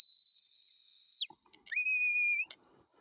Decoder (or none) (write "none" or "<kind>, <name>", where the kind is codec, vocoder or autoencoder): none